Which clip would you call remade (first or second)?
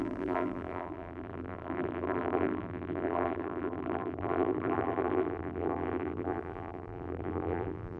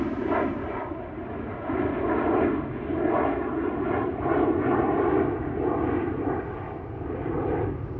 first